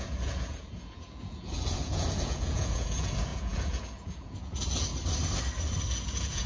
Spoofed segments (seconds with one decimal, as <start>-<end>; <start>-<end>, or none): 0.0-4.9; 5.9-6.5